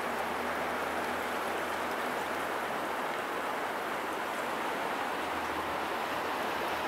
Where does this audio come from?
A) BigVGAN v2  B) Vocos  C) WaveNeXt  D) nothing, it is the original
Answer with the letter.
D